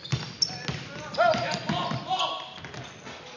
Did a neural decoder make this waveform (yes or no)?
no